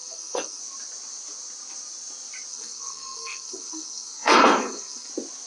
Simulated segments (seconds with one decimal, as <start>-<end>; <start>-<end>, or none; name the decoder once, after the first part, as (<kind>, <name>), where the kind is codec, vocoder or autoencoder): 0.0-0.6 (codec, SNAC); 2.5-5.1